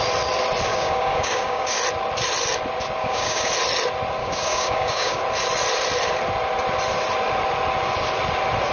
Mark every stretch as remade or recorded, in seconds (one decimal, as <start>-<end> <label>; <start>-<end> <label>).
0.0-0.7 recorded; 0.7-1.8 remade; 1.8-3.0 recorded; 3.0-3.5 remade; 3.5-4.2 recorded; 4.2-5.2 remade; 5.2-8.7 recorded